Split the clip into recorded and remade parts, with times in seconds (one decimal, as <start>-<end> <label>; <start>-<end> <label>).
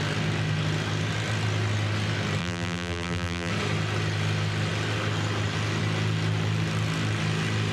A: 0.0-2.4 recorded; 2.4-3.5 remade; 3.5-7.7 recorded